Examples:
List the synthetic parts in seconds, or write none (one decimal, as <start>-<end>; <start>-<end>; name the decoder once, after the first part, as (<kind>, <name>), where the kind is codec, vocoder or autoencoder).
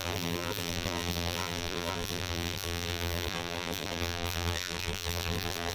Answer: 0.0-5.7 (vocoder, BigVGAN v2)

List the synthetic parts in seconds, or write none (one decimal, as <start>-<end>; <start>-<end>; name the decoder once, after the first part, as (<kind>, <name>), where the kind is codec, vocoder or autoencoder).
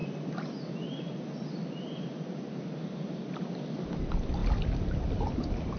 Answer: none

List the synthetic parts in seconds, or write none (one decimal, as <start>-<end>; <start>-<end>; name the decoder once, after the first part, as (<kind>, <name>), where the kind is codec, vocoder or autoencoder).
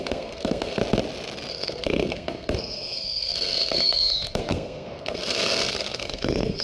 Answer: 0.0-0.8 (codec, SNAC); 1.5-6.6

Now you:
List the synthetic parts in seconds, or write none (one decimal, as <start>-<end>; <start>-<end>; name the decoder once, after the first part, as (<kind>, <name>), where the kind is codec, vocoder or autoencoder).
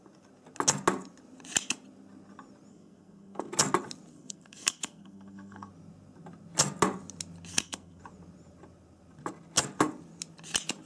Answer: 2.7-3.5 (codec, SNAC); 4.1-5.7; 7.5-8.0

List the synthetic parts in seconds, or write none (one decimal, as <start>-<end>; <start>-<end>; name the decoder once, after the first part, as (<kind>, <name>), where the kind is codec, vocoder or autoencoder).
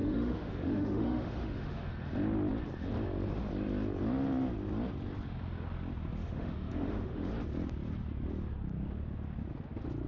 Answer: 0.0-1.9 (autoencoder, DAC-VAE); 6.2-7.3